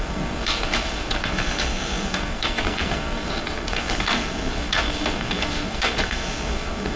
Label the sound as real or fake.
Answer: fake